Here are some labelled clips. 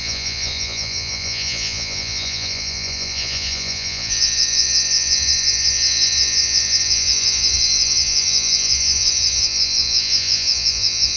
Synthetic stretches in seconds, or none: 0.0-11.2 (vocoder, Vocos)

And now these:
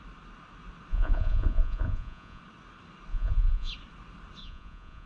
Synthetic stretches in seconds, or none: 0.9-2.4 (vocoder, Vocos); 3.1-3.7; 4.4-5.1

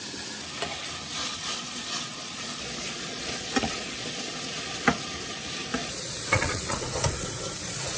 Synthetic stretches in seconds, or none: 1.2-4.4 (vocoder, Vocos); 5.7-7.3

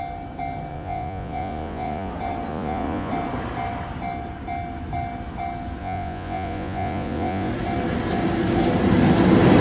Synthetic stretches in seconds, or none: 0.7-2.1 (vocoder, Vocos); 2.5-3.1; 5.8-7.5

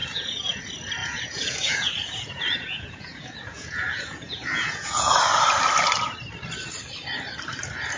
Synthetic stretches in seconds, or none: 0.0-0.6 (vocoder, Vocos); 1.0-5.2

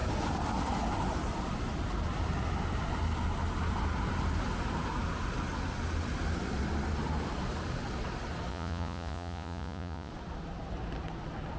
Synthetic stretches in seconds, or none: 8.5-10.1 (vocoder, Vocos)

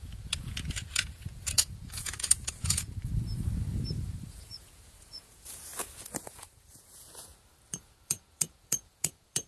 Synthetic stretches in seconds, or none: 0.0-3.1 (vocoder, Vocos); 4.3-5.7; 6.2-7.3; 7.8-9.5